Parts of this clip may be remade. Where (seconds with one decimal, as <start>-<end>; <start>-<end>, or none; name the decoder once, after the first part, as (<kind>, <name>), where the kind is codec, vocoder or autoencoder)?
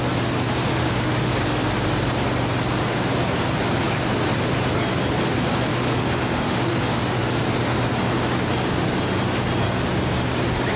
0.7-1.3 (autoencoder, DAC-VAE); 5.7-7.4